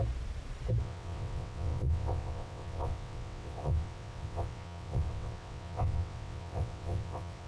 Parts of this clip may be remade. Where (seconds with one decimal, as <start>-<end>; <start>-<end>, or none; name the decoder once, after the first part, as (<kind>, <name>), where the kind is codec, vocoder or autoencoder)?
0.8-7.5 (vocoder, WaveNeXt)

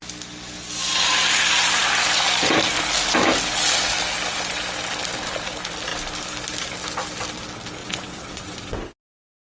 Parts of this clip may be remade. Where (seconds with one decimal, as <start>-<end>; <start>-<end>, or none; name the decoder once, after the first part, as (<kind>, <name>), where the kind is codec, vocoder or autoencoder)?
7.8-8.9 (vocoder, WaveNeXt)

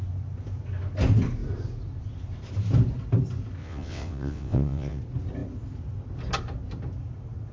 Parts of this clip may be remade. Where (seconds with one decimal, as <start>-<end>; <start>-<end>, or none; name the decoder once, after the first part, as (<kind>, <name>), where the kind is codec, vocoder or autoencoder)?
3.6-5.0 (vocoder, WaveNeXt)

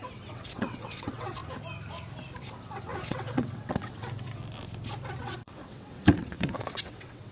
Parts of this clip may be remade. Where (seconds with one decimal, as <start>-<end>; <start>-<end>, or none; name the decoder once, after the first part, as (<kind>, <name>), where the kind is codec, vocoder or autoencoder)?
0.0-1.4 (vocoder, WaveNeXt); 2.4-4.4; 5.2-7.3

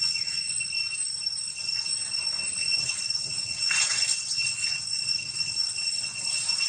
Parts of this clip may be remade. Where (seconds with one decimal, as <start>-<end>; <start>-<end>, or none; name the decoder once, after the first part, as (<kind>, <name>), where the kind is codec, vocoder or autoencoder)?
0.0-0.4 (vocoder, WaveNeXt); 1.5-1.9; 2.8-6.7

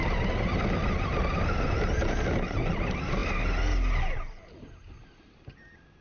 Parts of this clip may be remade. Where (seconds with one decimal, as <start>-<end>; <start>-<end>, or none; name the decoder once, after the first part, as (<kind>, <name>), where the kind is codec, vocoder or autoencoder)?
none

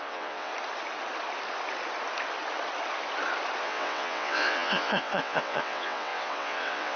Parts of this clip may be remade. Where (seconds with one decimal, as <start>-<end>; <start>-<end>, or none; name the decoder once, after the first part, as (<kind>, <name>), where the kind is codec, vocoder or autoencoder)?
0.0-0.5 (vocoder, WaveNeXt); 3.6-7.0